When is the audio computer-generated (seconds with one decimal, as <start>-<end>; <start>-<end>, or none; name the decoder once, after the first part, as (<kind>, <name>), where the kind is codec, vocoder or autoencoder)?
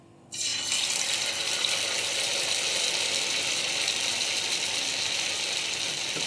none